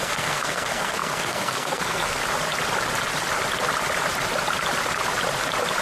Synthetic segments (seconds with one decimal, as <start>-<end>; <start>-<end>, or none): 0.0-2.2